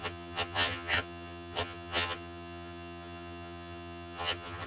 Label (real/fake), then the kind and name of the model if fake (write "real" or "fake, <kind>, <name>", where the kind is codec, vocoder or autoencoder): fake, vocoder, HiFi-GAN